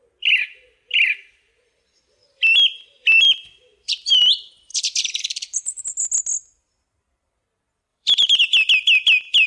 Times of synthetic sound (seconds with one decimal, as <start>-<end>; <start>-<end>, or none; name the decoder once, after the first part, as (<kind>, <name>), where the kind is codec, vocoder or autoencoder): 3.1-4.2 (vocoder, BigVGAN v2); 4.7-5.8; 7.9-8.4